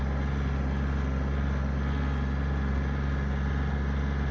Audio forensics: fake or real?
real